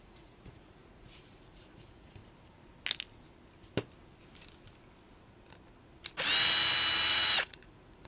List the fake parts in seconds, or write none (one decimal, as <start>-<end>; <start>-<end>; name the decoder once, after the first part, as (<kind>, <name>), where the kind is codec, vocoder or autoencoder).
0.0-2.2 (vocoder, Vocos); 7.1-8.1